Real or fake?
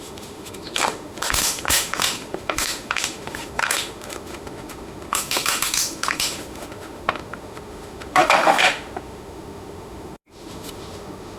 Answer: fake